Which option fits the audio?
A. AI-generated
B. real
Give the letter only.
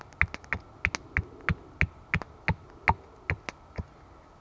B